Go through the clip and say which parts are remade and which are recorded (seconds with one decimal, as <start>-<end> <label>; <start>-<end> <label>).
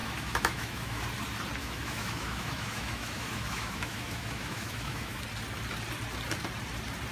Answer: 0.0-1.0 remade; 1.0-1.6 recorded; 1.6-5.2 remade; 5.2-7.1 recorded